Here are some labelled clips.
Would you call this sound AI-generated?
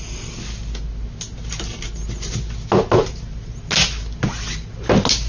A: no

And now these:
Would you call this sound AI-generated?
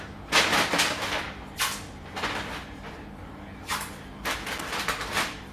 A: no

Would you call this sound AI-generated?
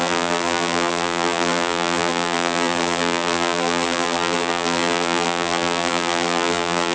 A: yes